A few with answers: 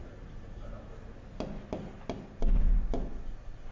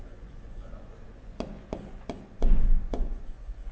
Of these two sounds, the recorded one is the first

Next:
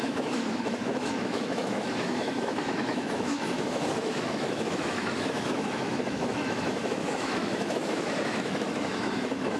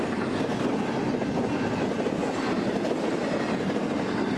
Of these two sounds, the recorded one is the second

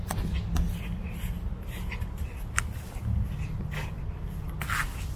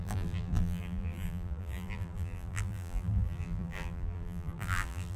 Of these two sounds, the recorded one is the first